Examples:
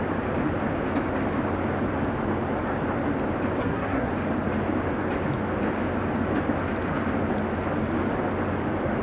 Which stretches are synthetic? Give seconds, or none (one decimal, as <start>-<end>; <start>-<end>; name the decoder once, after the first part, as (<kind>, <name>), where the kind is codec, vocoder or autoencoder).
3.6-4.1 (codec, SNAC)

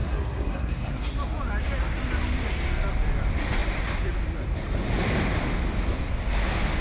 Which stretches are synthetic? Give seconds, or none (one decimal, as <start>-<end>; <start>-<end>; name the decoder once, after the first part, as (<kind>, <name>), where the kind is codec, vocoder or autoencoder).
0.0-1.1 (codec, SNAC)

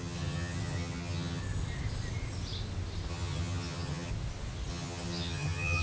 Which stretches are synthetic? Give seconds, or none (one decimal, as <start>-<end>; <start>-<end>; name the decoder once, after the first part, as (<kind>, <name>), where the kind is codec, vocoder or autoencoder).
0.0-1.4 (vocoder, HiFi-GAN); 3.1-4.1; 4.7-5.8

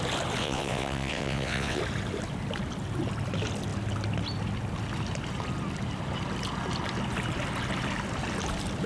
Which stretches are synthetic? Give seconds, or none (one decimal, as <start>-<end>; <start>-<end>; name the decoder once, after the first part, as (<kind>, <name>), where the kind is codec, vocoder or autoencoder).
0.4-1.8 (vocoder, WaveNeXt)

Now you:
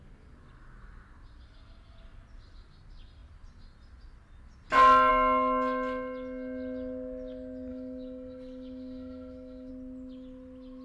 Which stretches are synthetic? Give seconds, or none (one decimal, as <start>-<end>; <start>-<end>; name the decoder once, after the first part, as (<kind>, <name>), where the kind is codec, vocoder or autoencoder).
7.7-9.7 (autoencoder, DAC-VAE)

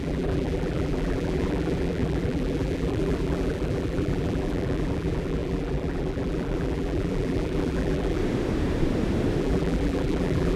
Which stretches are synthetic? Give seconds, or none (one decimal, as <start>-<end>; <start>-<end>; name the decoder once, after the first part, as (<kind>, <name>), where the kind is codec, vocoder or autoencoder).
0.0-8.2 (vocoder, BigVGAN v2); 9.4-10.6